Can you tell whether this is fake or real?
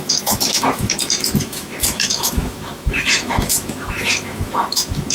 fake